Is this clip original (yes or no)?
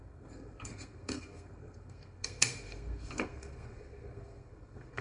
no